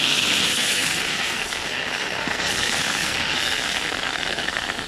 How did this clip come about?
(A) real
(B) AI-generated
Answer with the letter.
B